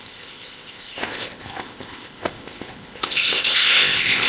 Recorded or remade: remade